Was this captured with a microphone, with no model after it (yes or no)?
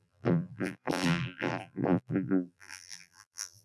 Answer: no